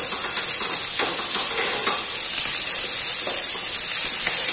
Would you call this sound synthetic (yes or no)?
no